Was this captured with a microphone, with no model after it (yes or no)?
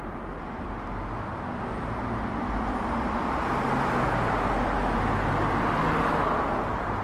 yes